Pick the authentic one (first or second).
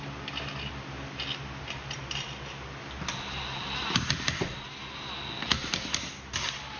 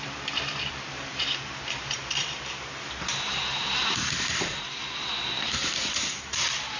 first